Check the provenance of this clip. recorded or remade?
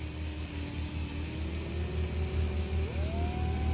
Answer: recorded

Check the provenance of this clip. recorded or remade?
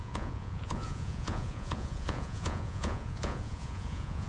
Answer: remade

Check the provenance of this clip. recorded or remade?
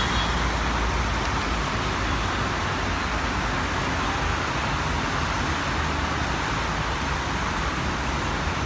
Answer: recorded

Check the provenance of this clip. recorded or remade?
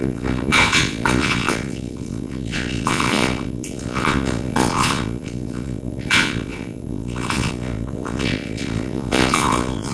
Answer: remade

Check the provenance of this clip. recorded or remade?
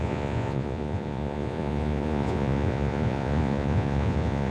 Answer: remade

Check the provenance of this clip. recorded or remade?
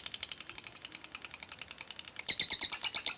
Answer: recorded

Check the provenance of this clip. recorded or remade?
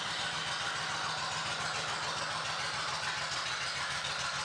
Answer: recorded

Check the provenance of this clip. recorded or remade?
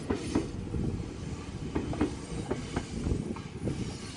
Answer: recorded